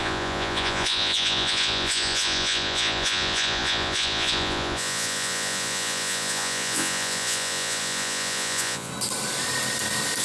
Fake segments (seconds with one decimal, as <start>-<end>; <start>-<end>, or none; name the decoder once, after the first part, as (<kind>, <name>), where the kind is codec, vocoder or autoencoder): 0.0-8.9 (vocoder, Vocos)